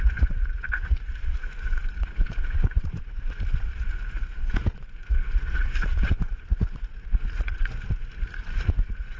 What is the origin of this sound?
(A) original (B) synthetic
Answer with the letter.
B